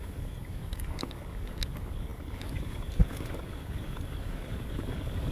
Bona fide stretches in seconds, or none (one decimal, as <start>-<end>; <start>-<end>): none